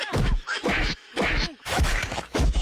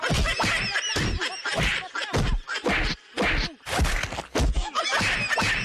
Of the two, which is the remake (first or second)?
first